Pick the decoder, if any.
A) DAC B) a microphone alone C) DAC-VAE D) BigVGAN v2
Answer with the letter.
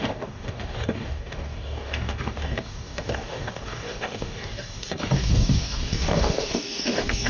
A